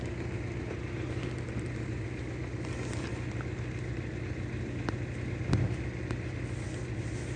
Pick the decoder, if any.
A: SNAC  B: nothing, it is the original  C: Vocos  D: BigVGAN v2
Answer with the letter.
B